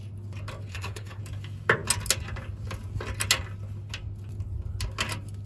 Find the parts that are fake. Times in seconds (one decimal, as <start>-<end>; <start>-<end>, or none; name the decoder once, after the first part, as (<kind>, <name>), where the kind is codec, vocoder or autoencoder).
0.7-1.2 (codec, SNAC)